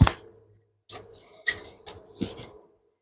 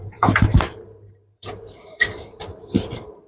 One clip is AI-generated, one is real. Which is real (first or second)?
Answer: first